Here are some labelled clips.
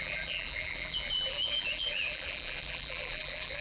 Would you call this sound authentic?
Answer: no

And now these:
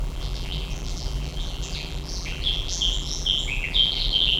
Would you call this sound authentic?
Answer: no